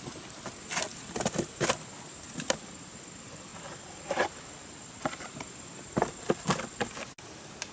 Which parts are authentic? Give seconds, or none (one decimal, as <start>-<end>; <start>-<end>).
0.0-7.7